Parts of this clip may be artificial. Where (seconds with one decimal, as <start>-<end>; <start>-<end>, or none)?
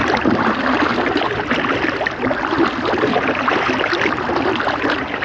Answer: none